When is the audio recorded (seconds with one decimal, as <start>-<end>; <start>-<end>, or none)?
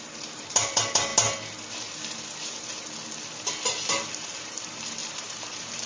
1.1-4.1